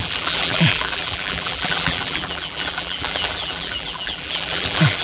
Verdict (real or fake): fake